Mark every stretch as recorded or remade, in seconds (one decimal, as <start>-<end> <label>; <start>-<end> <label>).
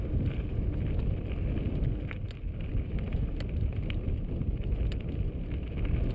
0.0-6.1 recorded